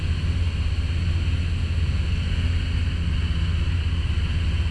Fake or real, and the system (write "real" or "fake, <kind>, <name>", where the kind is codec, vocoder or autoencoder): real